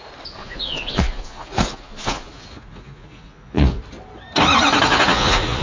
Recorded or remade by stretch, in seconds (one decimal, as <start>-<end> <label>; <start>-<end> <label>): 0.0-0.4 recorded; 0.4-3.8 remade; 3.8-4.9 recorded; 4.9-5.6 remade